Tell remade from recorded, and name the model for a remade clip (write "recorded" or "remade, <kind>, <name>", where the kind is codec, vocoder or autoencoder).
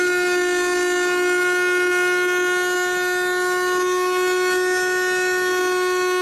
recorded